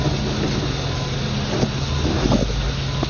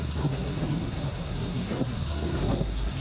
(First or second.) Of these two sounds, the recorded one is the first